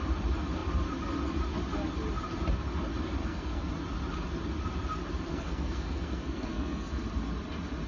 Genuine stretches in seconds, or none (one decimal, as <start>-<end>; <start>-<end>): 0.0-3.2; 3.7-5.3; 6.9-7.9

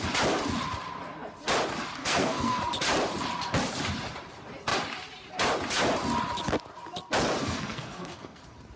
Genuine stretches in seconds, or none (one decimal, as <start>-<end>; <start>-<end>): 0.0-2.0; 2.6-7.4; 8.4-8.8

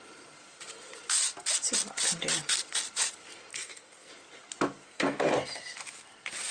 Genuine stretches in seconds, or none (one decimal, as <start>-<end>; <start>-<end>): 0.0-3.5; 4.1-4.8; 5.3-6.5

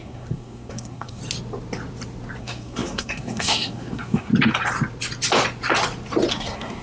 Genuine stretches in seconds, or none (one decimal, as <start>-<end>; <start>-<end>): 1.2-2.4; 4.3-6.3

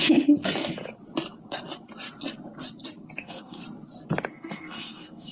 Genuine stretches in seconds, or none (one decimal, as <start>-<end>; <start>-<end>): 0.0-3.2; 3.6-4.3

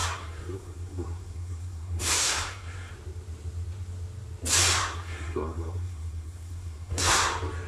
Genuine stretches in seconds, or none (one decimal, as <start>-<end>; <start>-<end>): 2.9-4.8; 7.3-7.7